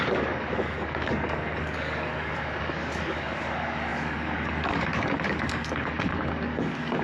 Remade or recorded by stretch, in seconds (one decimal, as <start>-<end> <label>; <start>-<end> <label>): 0.0-7.0 remade

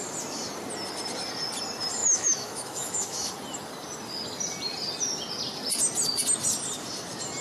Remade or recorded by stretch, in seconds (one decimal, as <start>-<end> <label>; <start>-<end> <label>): 0.0-2.0 recorded; 2.0-3.3 remade; 3.3-7.4 recorded

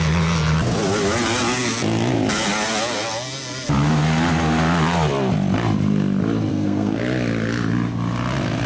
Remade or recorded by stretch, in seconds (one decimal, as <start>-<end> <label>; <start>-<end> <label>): 0.0-6.5 recorded; 6.5-7.0 remade; 7.0-8.7 recorded